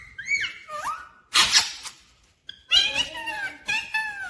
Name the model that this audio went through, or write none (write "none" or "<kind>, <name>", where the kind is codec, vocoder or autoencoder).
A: none